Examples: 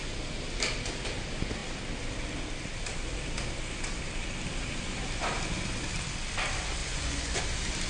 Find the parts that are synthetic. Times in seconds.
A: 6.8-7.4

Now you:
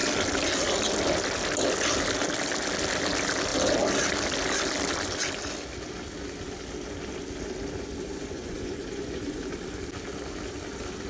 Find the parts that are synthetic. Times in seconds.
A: 8.1-9.4